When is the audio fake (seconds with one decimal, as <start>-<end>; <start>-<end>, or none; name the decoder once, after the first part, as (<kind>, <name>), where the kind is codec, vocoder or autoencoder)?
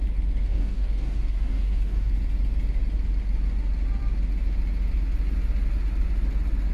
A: 0.5-2.1 (codec, DAC)